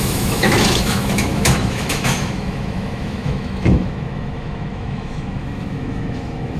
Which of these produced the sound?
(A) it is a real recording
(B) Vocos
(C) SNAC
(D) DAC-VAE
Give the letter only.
D